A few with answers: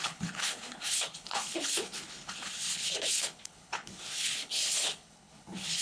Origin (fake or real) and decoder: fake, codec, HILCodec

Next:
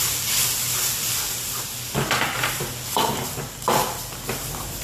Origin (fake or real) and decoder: real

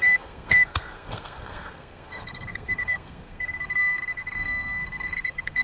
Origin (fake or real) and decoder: fake, codec, SNAC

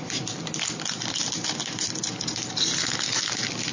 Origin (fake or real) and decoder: real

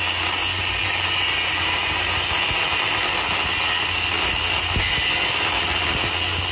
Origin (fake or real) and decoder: real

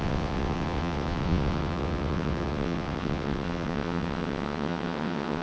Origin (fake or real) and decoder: fake, vocoder, WaveNeXt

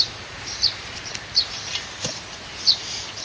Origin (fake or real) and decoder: fake, vocoder, BigVGAN v2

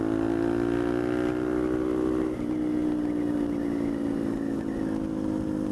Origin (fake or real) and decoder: real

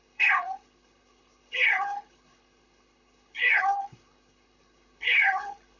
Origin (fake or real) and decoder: fake, codec, HILCodec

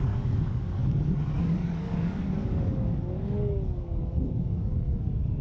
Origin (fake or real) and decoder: fake, codec, DAC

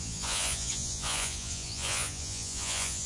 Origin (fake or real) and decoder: fake, vocoder, Vocos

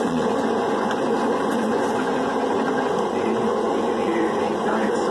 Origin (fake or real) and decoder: fake, vocoder, Vocos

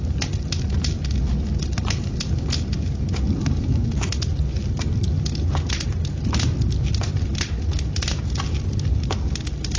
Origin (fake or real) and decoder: real